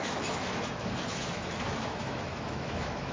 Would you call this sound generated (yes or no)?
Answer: yes